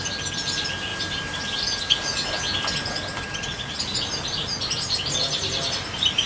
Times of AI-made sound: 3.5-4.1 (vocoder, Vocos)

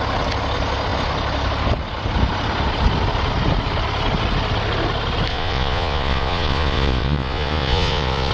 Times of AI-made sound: 5.3-8.3 (vocoder, Vocos)

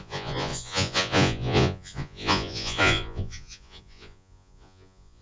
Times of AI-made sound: 0.0-5.2 (vocoder, Vocos)